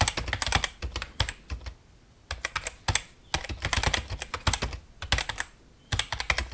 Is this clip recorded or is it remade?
recorded